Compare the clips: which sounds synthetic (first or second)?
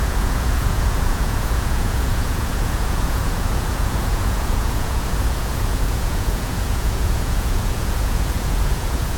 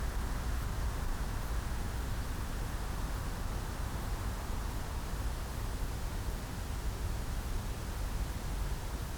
first